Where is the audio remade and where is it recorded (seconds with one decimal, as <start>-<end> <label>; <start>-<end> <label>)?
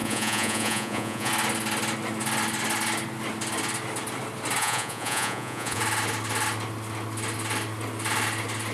0.0-1.3 remade; 1.3-4.6 recorded; 4.6-5.8 remade; 5.8-8.7 recorded